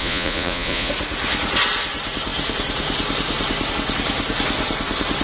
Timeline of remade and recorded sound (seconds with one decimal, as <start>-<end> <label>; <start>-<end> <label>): 0.0-0.9 remade; 0.9-5.2 recorded